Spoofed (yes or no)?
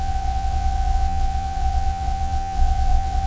yes